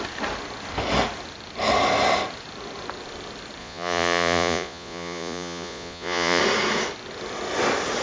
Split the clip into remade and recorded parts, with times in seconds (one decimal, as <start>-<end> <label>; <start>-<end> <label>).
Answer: 0.0-3.6 recorded; 3.6-6.4 remade; 6.4-8.0 recorded